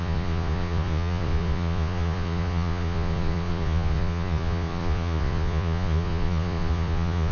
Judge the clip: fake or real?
fake